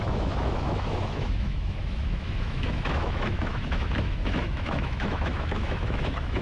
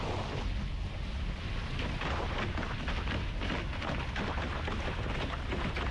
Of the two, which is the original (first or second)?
second